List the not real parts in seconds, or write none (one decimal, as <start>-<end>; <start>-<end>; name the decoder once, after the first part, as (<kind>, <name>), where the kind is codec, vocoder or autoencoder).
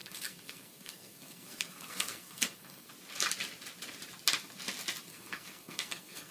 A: 0.0-2.9 (codec, SNAC); 5.1-6.3